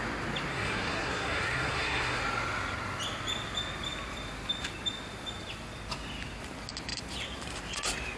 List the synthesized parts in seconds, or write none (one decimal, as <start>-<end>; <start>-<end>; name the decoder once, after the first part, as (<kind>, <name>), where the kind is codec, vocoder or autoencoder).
0.5-2.2 (codec, SNAC)